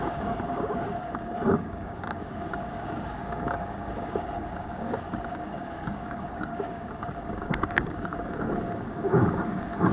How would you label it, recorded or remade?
remade